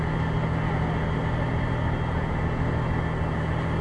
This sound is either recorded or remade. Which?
recorded